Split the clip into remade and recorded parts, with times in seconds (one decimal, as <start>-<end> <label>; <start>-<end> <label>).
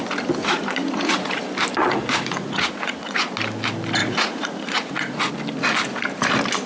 0.0-0.4 recorded; 0.4-1.4 remade; 1.4-1.8 recorded; 1.8-3.3 remade; 3.3-4.0 recorded; 4.0-5.3 remade; 5.3-6.7 recorded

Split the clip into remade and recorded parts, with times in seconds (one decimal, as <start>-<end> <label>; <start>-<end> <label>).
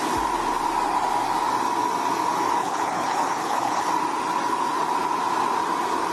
0.0-2.6 recorded; 2.6-3.9 remade; 3.9-6.1 recorded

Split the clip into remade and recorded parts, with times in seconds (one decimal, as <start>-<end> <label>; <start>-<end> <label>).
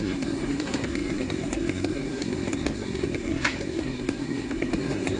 0.0-5.2 remade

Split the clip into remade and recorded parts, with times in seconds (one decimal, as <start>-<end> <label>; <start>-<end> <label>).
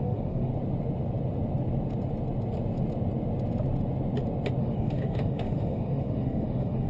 0.0-0.5 remade; 0.5-4.6 recorded; 4.6-6.9 remade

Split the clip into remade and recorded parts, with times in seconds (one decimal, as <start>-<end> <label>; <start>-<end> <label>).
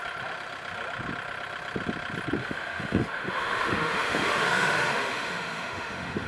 0.0-2.4 recorded; 2.4-6.3 remade